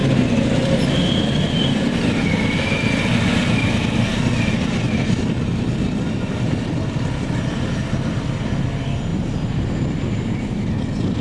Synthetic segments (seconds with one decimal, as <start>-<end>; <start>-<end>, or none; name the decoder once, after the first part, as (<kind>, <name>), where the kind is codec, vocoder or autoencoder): 0.9-11.2 (vocoder, BigVGAN v2)